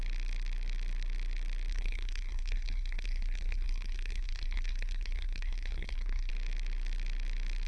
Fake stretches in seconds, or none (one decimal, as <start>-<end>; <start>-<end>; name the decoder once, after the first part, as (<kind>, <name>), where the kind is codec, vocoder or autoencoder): 1.7-6.3 (codec, SNAC)